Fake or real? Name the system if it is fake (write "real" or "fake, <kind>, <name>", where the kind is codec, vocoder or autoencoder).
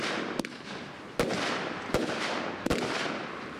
real